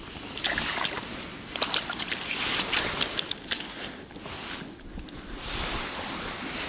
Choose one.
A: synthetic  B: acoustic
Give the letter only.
B